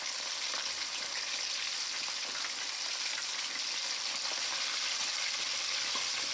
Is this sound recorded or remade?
recorded